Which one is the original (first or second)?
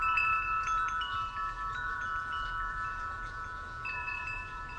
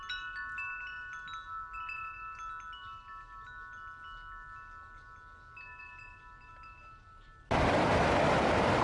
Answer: second